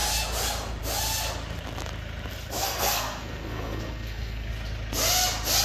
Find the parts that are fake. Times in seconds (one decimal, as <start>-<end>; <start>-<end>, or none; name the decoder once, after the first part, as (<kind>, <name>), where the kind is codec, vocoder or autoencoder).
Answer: 2.6-4.5 (codec, SNAC)